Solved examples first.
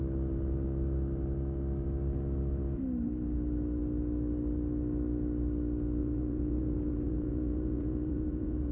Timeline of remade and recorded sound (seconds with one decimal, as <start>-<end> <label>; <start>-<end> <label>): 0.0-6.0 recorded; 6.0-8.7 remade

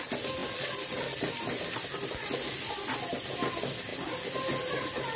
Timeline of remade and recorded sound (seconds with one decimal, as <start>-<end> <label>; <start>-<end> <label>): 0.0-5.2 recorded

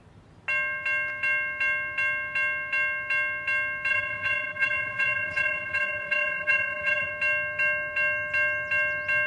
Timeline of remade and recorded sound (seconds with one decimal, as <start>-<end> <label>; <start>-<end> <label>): 0.0-3.9 recorded; 3.9-7.1 remade; 7.1-9.3 recorded